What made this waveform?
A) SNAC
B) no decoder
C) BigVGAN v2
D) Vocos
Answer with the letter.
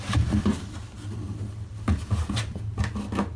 B